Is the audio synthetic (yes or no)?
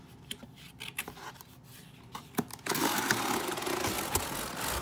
no